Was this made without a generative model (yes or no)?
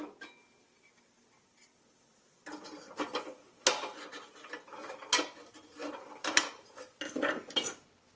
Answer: yes